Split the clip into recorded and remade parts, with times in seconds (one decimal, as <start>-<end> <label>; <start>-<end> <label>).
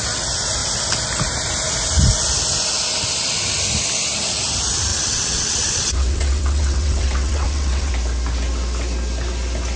0.0-4.9 recorded; 4.9-7.9 remade; 7.9-9.8 recorded